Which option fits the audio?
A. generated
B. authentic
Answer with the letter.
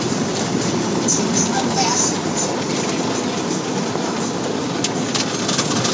B